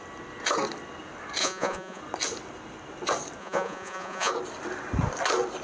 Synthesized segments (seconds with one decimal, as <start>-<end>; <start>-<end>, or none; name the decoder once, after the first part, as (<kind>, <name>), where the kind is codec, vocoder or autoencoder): 1.4-2.0 (vocoder, Vocos); 3.4-4.3